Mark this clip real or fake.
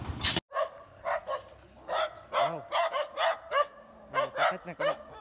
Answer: real